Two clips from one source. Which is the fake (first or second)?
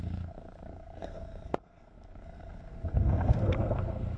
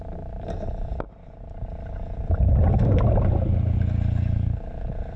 first